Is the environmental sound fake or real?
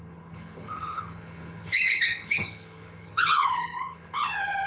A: fake